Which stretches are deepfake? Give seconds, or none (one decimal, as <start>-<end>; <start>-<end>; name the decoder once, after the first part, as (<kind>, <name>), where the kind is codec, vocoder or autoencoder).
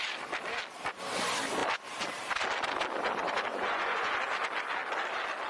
3.5-4.1 (vocoder, Vocos)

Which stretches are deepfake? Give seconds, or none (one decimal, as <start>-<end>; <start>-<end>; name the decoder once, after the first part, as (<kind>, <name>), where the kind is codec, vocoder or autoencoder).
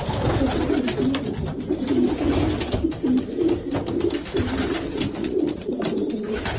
5.2-5.7 (vocoder, Vocos)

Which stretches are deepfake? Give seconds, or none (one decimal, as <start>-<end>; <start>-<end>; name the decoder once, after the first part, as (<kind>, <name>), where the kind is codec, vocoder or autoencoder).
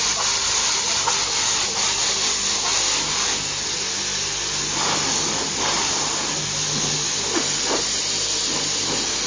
none